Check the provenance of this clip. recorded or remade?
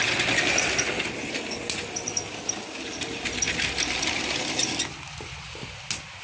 recorded